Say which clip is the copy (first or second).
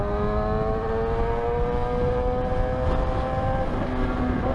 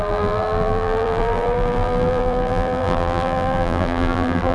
second